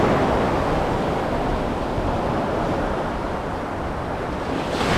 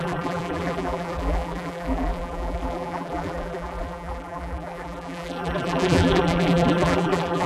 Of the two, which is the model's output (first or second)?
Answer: second